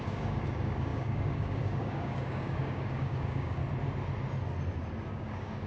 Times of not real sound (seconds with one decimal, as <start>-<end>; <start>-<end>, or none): 0.0-3.6; 5.1-5.7